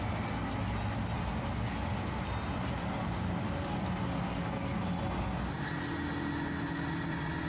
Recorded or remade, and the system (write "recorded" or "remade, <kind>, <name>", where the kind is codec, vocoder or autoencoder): recorded